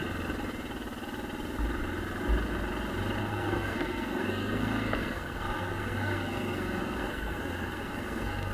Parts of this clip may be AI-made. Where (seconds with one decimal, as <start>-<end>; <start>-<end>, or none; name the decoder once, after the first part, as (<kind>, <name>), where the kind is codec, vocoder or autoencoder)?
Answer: 3.2-8.5 (codec, SNAC)